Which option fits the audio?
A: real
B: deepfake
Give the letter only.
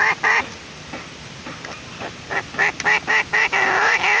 A